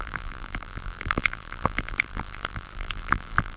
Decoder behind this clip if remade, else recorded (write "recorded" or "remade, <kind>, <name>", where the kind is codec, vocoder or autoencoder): remade, vocoder, BigVGAN v2